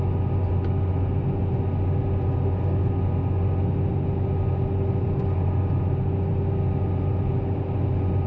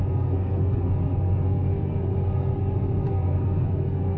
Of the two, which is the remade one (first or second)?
second